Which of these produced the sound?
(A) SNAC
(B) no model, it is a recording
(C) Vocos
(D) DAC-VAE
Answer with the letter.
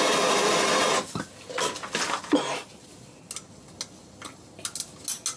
B